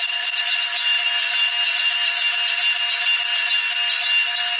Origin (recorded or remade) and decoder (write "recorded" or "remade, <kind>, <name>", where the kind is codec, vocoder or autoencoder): recorded